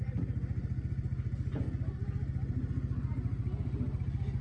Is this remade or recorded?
recorded